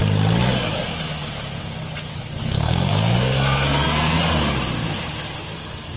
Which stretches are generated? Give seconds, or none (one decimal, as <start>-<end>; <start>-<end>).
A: 2.4-4.2; 5.5-6.0